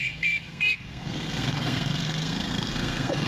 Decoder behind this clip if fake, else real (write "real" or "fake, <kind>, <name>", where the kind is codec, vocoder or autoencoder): fake, codec, SNAC